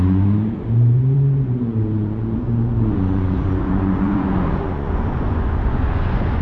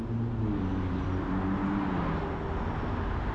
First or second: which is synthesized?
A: first